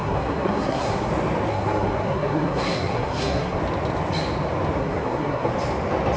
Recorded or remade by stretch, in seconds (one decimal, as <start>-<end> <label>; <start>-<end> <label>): 0.0-1.1 remade; 1.1-1.5 recorded; 1.5-3.6 remade; 3.6-4.8 recorded; 4.8-5.5 remade; 5.5-6.2 recorded